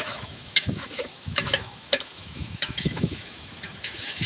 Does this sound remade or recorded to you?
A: remade